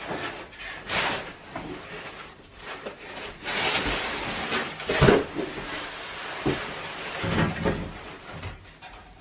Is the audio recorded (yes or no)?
yes